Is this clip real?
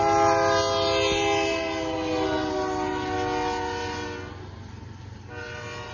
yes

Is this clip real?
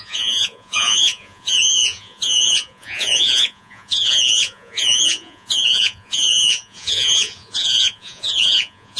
no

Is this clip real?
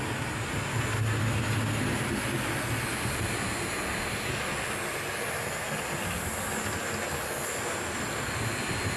yes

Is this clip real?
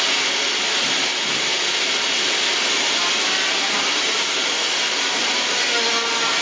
yes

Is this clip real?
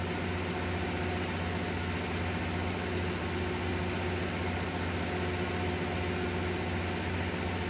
yes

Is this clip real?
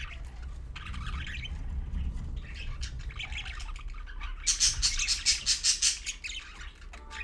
yes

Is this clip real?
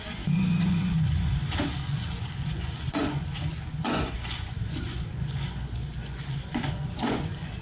no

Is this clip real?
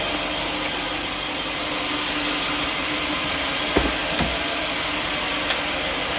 yes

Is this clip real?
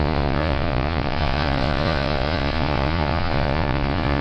no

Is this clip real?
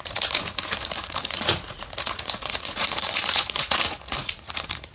no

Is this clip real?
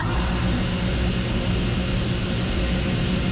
yes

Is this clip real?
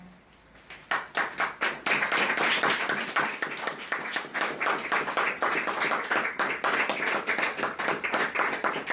yes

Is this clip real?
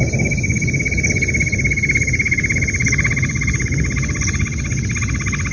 yes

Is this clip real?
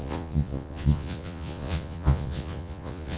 no